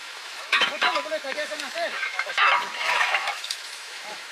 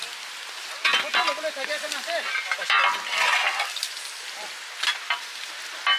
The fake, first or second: first